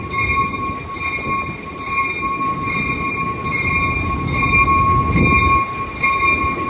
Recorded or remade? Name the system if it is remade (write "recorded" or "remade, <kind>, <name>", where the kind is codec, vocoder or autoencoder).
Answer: recorded